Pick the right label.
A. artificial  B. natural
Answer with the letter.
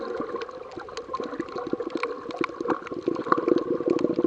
B